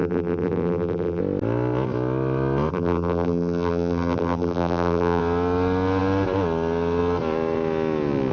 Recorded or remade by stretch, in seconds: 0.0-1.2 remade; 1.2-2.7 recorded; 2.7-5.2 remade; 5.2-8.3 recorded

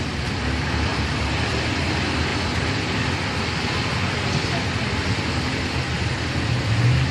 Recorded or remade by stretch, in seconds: 0.0-2.3 recorded; 2.3-3.7 remade; 3.7-7.1 recorded

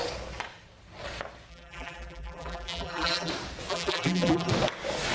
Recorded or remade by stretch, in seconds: 0.0-1.5 recorded; 1.5-3.3 remade; 3.3-3.7 recorded; 3.7-4.5 remade; 4.5-5.1 recorded

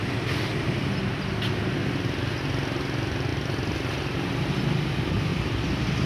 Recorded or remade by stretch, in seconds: 0.0-3.3 recorded; 3.3-4.6 remade; 4.6-6.1 recorded

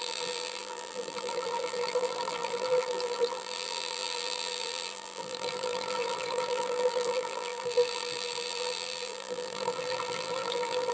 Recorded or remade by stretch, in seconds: 0.0-10.9 remade

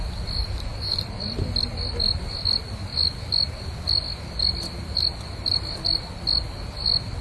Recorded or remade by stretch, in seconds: 0.0-7.2 recorded

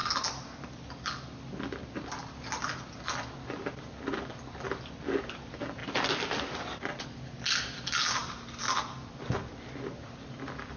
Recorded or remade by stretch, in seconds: 0.0-10.8 recorded

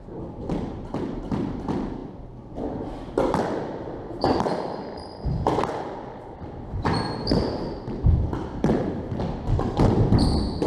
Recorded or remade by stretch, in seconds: 0.0-10.7 remade